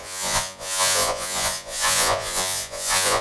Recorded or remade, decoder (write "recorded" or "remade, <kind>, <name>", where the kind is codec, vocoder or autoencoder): remade, vocoder, Vocos